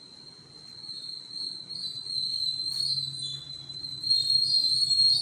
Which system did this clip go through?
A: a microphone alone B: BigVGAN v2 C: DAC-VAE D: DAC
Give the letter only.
A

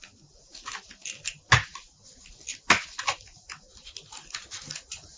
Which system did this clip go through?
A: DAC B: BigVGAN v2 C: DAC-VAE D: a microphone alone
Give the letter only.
D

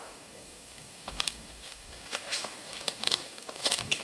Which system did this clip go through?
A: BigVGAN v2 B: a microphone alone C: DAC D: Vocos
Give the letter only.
C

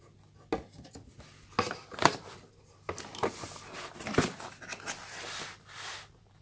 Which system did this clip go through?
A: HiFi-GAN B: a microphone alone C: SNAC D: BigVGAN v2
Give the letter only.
B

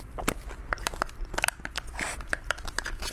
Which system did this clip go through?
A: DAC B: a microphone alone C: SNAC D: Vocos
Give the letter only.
B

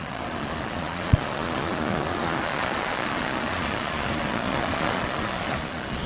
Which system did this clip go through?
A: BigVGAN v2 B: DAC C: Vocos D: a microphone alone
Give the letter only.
C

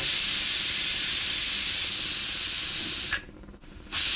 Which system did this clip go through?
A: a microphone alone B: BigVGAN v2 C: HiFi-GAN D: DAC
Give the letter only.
A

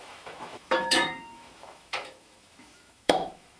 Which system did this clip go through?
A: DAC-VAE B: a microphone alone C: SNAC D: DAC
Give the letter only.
A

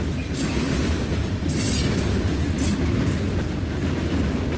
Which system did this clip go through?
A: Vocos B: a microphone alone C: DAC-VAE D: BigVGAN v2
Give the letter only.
B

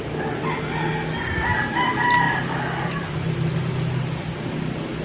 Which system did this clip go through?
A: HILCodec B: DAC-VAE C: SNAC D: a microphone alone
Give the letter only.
D